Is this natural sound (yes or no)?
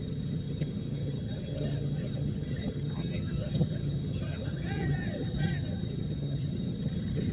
no